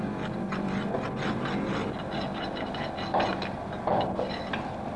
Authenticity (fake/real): real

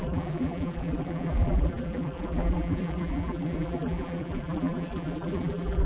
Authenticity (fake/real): fake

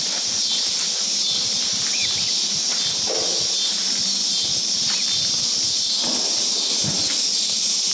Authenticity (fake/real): real